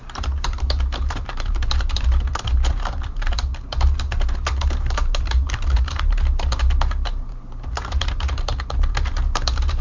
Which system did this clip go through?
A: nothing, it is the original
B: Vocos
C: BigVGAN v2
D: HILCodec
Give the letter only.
C